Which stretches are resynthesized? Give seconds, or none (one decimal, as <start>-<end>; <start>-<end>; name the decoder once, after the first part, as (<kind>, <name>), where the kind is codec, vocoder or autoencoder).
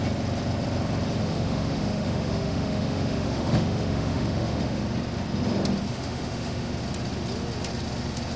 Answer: 1.2-4.8 (autoencoder, DAC-VAE); 5.9-6.7